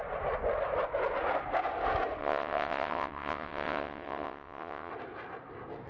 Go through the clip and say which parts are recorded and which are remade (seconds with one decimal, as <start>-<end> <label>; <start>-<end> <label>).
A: 0.0-2.2 recorded; 2.2-4.9 remade; 4.9-5.9 recorded